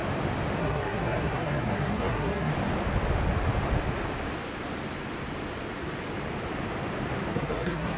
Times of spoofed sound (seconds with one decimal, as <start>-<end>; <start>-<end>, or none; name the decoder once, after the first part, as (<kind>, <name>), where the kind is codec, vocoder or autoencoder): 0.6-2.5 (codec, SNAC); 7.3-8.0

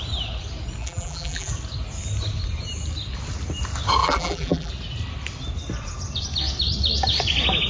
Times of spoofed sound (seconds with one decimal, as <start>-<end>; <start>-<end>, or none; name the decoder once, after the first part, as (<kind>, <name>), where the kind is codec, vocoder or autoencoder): 0.8-1.5 (vocoder, BigVGAN v2); 4.0-4.7

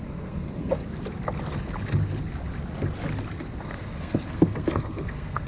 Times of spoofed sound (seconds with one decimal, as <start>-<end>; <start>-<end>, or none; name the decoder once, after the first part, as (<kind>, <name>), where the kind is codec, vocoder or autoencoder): 0.0-0.8 (codec, SNAC); 3.6-5.5